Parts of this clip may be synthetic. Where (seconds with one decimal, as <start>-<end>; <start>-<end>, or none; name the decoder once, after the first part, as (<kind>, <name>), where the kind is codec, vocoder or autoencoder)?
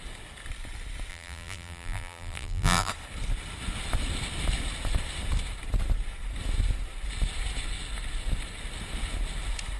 1.1-2.9 (vocoder, BigVGAN v2)